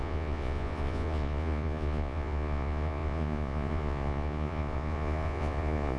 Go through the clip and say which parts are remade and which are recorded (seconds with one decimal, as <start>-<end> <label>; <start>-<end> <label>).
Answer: 0.0-6.0 remade